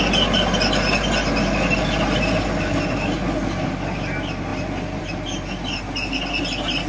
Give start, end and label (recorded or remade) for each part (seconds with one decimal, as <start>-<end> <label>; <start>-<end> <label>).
0.0-6.9 recorded